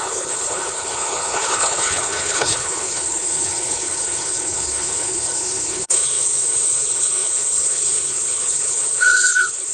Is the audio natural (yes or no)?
no